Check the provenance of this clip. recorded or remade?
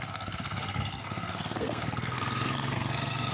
remade